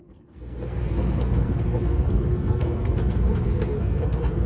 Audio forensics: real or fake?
fake